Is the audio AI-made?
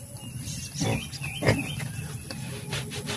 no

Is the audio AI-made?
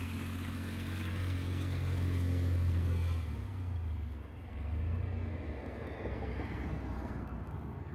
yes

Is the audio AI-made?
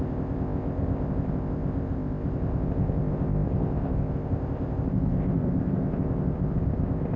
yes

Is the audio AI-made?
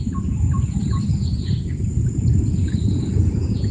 yes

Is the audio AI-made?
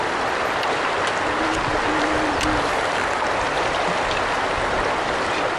no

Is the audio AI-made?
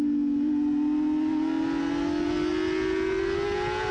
no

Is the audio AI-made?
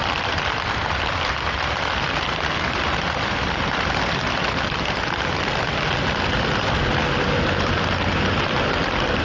no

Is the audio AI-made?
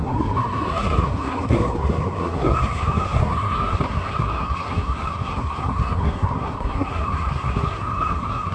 yes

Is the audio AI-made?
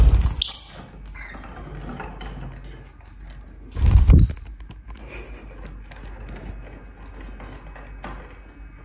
no